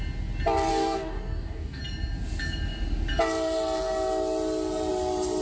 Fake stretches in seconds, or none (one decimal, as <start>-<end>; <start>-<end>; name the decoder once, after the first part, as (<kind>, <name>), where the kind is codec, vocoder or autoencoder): 0.7-1.8 (codec, DAC)